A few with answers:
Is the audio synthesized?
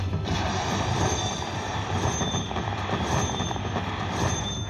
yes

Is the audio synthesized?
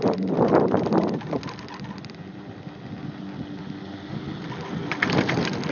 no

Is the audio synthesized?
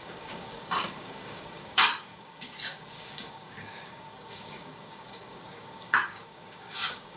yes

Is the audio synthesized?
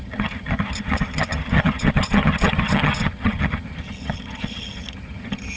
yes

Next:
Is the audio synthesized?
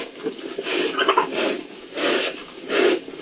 yes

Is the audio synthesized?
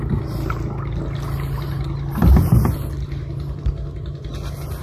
no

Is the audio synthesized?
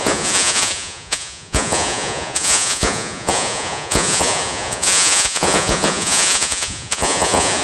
yes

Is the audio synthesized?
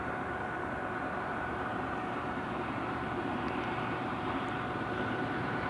yes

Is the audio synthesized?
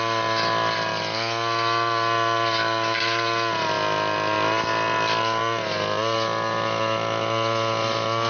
no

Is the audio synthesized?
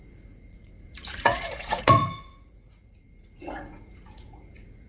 yes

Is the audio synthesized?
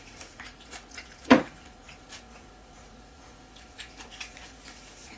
yes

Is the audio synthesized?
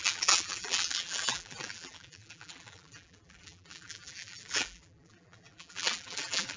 yes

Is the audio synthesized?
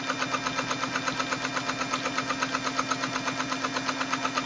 no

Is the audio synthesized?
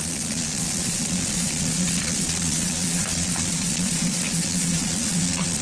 yes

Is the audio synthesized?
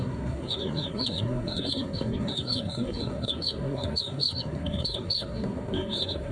yes